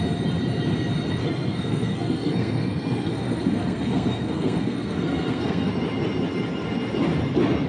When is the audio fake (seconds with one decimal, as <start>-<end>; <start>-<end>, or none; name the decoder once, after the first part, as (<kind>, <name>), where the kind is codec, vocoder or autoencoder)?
1.2-5.7 (codec, SNAC)